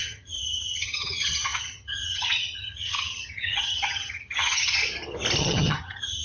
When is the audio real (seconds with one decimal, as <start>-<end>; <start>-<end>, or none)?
4.8-5.4